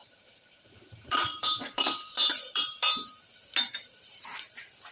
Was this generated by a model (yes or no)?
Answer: yes